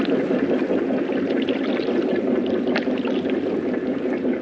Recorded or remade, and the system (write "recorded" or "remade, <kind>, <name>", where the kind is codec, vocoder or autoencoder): recorded